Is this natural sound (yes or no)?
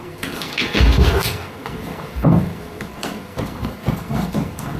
no